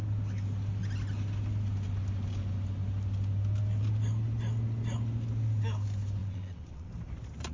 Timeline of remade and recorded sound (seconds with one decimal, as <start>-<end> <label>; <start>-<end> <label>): 0.0-6.2 recorded; 6.2-6.9 remade; 6.9-7.5 recorded